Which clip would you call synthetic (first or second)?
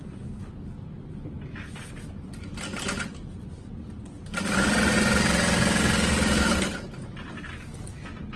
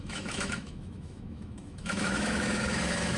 second